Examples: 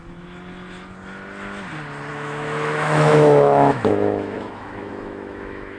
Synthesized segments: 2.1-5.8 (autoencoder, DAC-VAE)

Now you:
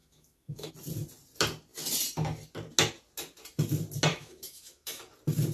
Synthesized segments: 0.0-0.7 (autoencoder, DAC-VAE); 4.1-5.0